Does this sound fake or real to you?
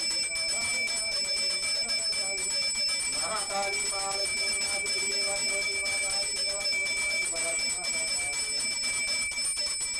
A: real